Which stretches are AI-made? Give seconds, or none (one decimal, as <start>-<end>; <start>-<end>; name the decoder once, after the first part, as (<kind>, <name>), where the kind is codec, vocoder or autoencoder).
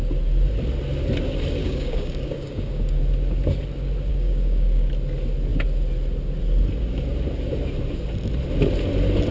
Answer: 1.6-3.0 (codec, DAC); 4.1-4.9